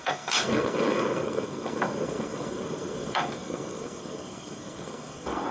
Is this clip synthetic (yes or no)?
yes